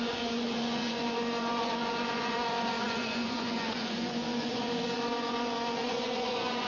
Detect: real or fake fake